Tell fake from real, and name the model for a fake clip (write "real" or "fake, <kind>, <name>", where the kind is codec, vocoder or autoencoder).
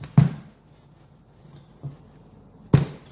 real